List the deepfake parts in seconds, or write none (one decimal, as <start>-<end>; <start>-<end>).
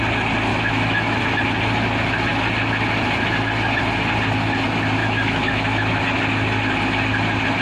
0.5-1.2; 5.0-6.0